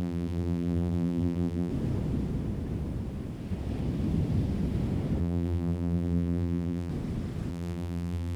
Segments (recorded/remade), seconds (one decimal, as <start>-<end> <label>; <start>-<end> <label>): 0.0-1.7 remade; 1.7-5.2 recorded; 5.2-6.9 remade; 6.9-7.5 recorded; 7.5-8.4 remade